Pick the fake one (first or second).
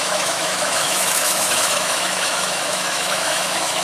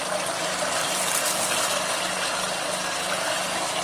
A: first